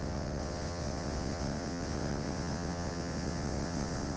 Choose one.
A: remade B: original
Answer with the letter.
A